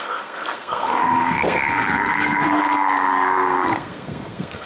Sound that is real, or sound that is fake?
fake